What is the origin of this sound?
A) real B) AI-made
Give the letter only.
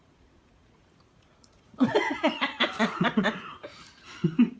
B